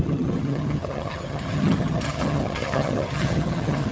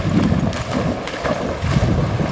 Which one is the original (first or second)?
second